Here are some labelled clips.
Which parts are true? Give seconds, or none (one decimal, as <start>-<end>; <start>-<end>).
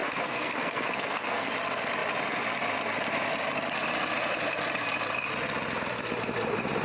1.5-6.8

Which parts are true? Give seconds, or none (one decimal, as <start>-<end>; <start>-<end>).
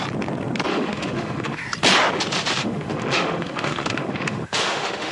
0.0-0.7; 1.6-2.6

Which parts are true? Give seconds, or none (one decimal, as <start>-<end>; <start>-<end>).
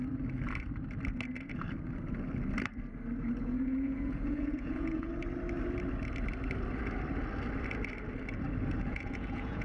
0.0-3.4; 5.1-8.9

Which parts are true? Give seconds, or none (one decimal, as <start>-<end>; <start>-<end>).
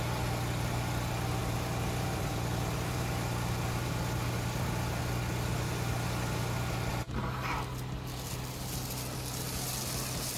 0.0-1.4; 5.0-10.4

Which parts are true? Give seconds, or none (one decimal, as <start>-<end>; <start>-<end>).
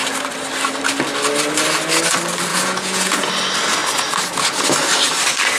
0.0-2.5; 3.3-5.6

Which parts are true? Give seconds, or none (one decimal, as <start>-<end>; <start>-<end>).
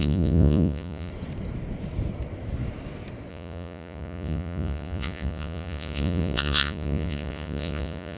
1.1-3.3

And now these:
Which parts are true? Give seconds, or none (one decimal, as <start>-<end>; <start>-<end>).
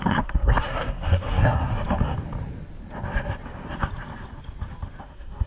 1.7-5.0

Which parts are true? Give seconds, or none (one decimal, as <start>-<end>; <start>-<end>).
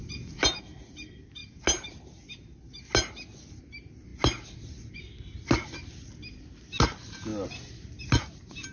0.0-8.7